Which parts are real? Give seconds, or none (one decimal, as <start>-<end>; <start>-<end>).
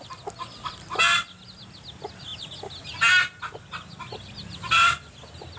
0.0-5.6